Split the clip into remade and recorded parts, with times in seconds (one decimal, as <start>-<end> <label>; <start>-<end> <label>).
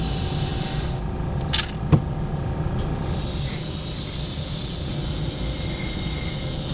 0.0-6.7 recorded